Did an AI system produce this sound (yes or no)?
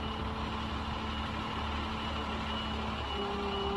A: no